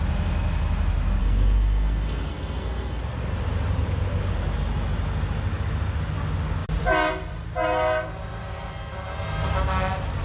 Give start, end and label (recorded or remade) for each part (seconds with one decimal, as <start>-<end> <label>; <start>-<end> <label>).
0.0-1.2 recorded; 1.2-3.0 remade; 3.0-10.2 recorded